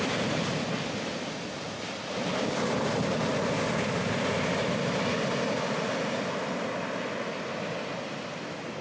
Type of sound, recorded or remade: recorded